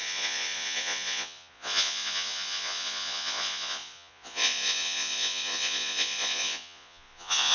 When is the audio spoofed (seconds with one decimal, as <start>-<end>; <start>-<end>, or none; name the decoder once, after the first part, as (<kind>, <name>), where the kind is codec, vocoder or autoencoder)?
0.0-7.5 (vocoder, Vocos)